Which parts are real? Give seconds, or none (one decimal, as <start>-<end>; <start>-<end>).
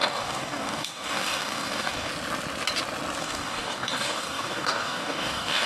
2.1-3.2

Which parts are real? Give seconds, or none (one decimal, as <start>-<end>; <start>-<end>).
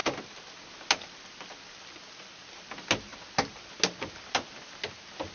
0.0-5.3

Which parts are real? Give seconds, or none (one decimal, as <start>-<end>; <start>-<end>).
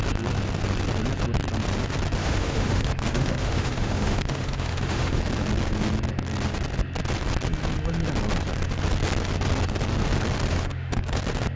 0.0-2.2; 5.2-10.5; 11.2-11.6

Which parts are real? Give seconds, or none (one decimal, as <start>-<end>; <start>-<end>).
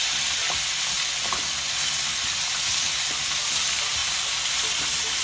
0.4-3.5; 4.0-4.7